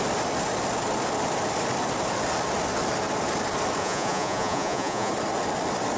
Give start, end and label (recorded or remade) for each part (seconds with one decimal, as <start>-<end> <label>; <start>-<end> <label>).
0.0-3.8 recorded; 3.8-5.1 remade; 5.1-6.0 recorded